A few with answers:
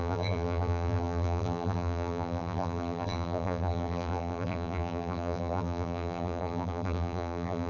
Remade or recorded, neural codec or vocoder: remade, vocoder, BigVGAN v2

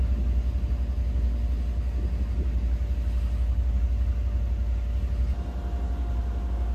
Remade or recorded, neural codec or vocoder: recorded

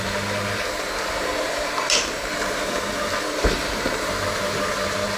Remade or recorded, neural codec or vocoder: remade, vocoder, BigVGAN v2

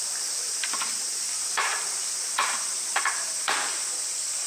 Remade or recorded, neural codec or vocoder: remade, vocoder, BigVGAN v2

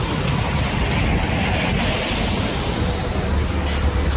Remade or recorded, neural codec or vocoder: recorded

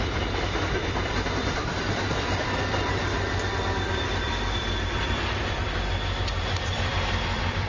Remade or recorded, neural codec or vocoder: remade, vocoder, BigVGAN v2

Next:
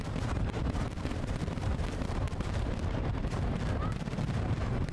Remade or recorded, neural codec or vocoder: remade, vocoder, BigVGAN v2